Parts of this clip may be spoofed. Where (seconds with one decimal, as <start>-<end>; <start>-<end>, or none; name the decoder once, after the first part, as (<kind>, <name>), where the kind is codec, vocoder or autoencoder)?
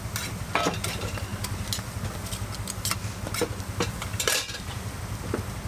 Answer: none